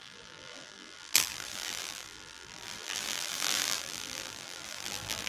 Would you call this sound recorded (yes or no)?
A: no